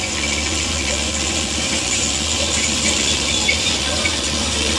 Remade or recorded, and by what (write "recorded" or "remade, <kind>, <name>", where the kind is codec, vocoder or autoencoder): remade, vocoder, Vocos